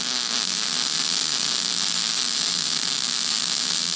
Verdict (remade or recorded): recorded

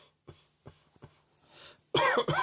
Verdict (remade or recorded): recorded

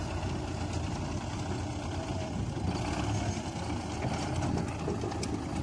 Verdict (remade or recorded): recorded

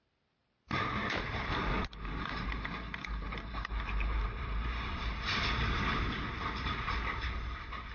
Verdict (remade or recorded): remade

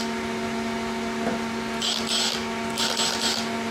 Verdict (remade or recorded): recorded